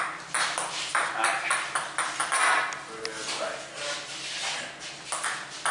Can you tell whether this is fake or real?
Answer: real